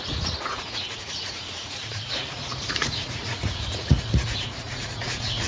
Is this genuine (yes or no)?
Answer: no